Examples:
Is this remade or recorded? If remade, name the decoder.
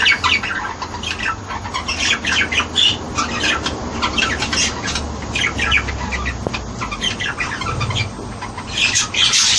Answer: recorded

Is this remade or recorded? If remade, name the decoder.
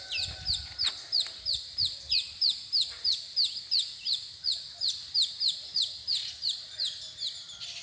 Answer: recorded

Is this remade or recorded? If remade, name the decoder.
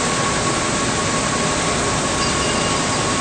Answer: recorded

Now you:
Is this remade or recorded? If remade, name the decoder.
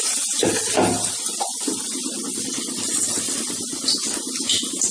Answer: recorded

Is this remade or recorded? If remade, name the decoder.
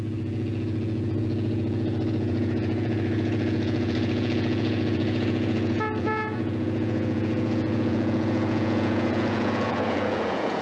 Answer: remade, vocoder, Vocos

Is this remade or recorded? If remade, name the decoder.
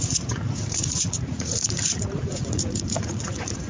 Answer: remade, vocoder, Vocos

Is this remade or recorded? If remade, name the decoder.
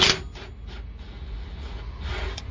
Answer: recorded